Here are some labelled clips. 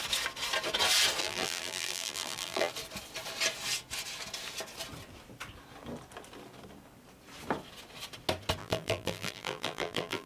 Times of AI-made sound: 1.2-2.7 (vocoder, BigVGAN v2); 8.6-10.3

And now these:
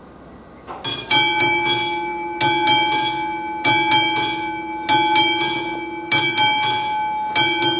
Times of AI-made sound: none

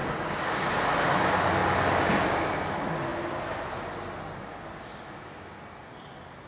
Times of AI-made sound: 0.0-0.7 (codec, DAC)

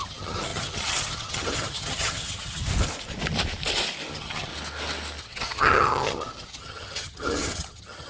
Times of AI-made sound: 0.0-2.6 (vocoder, HiFi-GAN); 4.1-4.5; 5.2-8.1

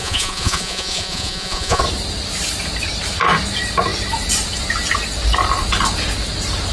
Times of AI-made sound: 0.0-1.8 (vocoder, Vocos)